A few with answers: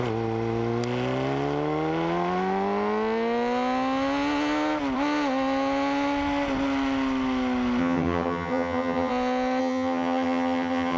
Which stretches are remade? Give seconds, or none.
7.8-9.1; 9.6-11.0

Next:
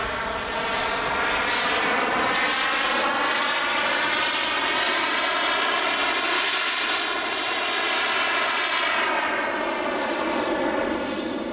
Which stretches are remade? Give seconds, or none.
none

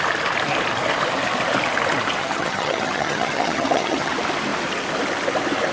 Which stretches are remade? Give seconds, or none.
2.2-4.1

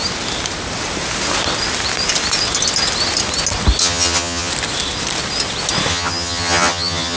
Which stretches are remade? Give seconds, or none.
3.8-4.5; 5.9-7.2

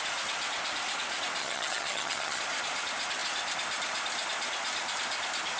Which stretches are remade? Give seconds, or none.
1.4-2.4

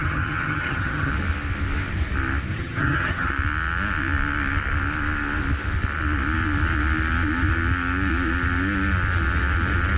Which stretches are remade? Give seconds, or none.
0.0-1.1; 2.5-3.3